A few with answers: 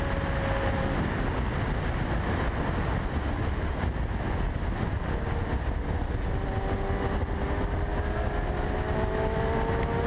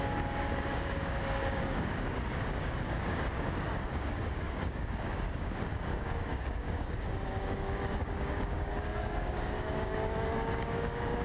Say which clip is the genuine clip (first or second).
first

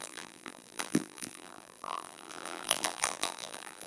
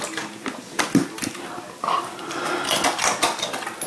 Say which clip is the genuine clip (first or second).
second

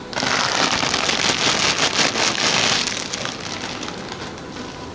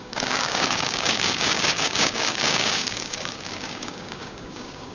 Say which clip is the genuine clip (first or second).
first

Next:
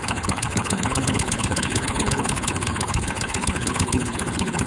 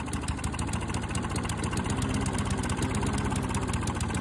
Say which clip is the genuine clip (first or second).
second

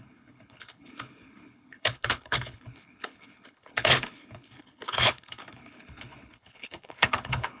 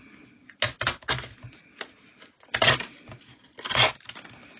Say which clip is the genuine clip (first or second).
second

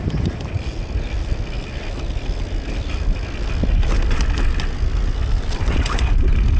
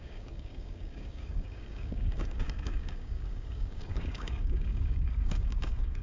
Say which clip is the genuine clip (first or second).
first